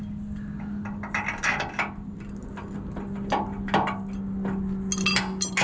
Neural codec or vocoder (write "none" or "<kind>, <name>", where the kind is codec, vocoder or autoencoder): none